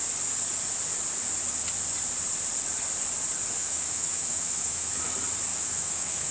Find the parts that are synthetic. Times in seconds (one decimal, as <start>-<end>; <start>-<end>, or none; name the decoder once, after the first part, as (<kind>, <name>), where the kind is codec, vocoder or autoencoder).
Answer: 3.6-5.0 (autoencoder, DAC-VAE); 5.5-6.3